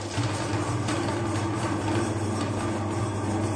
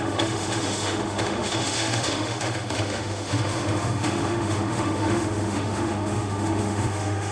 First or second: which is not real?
second